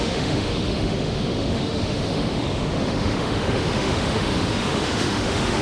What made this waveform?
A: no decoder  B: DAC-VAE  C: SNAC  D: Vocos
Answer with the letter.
B